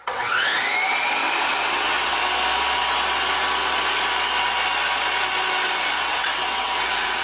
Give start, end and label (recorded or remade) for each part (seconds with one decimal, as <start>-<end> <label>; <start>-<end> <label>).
0.0-0.5 remade; 0.5-1.7 recorded; 1.7-2.1 remade; 2.1-6.0 recorded; 6.0-7.2 remade